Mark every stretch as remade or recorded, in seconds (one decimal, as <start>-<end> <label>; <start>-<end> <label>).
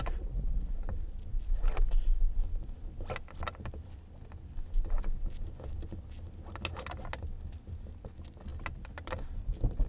0.0-9.9 recorded